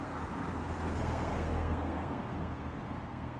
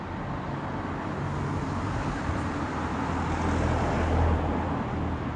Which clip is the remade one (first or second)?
first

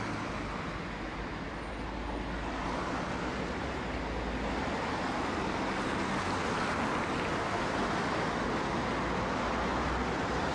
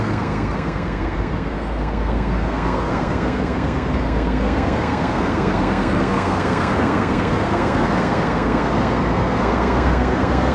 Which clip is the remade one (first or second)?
second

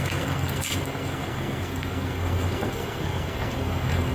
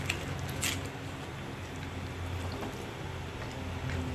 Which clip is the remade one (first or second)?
first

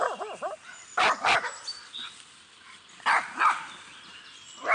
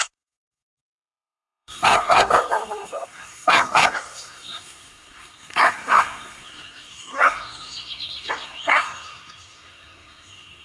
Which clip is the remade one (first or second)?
second